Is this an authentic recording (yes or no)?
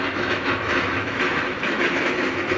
no